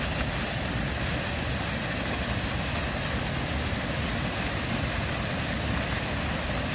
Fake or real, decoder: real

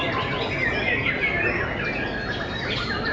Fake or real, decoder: real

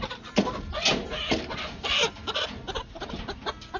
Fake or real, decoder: real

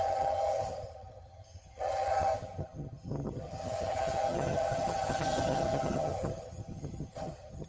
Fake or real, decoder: fake, vocoder, HiFi-GAN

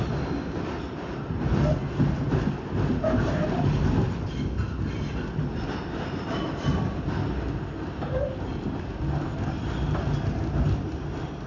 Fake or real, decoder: real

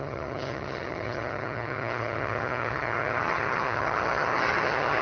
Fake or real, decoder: fake, vocoder, HiFi-GAN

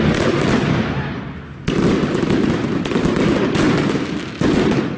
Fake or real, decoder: real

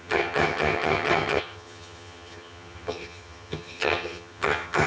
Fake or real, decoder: fake, vocoder, HiFi-GAN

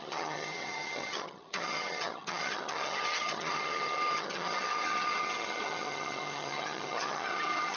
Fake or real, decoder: fake, vocoder, HiFi-GAN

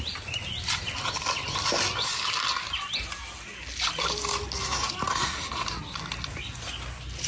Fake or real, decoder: real